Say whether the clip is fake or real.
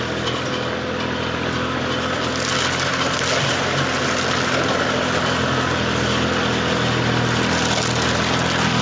real